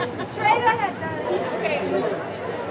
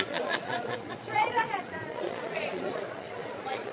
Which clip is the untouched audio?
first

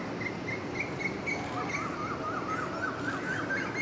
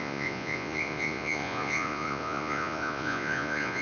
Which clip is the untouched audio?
first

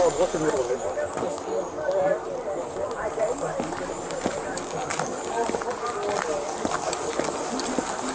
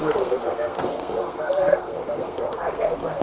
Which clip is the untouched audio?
first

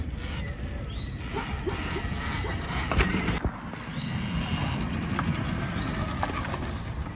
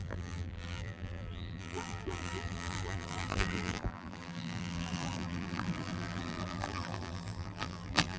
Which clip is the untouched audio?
first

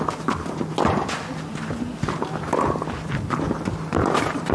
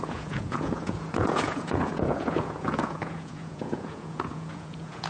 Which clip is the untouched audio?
first